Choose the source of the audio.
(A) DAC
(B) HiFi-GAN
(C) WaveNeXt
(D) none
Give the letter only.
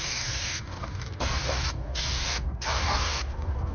A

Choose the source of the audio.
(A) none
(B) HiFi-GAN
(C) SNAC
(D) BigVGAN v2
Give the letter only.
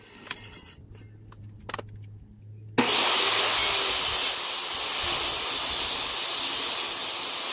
A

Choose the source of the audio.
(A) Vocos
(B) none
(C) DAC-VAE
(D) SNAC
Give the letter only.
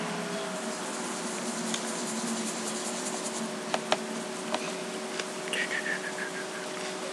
B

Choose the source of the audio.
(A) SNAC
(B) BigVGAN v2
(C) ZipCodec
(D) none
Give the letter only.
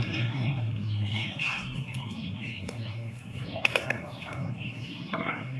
A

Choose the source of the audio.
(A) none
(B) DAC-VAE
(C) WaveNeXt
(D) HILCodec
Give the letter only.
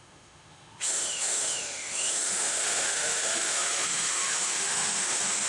B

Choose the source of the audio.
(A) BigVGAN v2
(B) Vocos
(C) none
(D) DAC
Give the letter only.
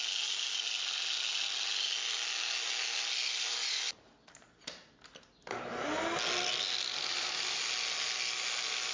C